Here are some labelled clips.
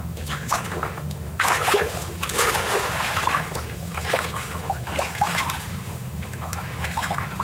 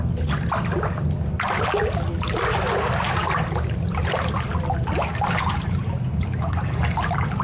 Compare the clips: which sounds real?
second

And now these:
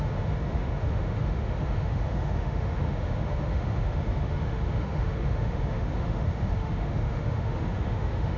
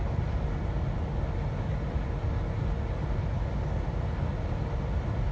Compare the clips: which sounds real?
second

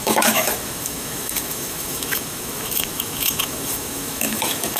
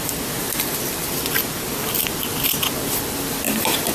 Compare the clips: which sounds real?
second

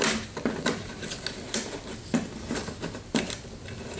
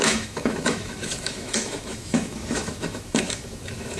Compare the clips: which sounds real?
first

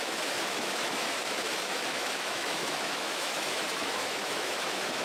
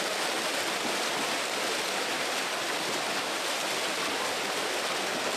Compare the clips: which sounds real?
second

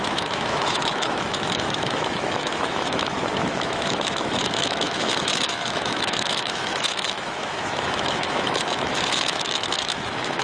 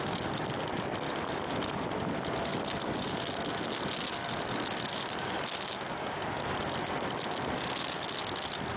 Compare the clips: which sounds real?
second